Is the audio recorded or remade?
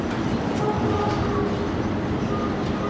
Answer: recorded